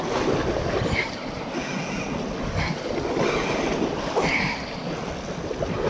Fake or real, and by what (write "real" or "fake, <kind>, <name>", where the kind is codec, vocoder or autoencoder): real